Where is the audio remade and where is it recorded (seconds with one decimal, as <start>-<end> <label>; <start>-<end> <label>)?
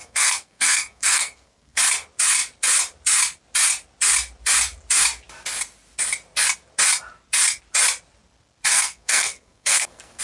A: 0.0-1.8 remade; 1.8-8.7 recorded; 8.7-10.2 remade